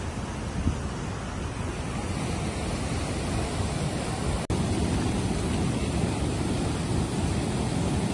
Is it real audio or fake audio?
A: real